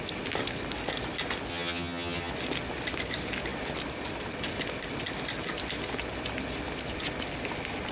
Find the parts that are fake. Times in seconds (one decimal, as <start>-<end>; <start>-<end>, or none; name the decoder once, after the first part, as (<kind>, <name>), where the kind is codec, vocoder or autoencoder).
1.5-2.3 (vocoder, HiFi-GAN)